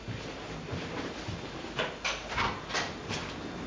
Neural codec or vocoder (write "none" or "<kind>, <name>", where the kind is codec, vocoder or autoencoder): none